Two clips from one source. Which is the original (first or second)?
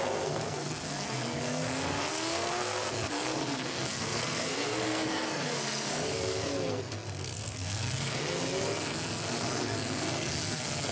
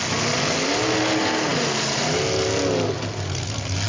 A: second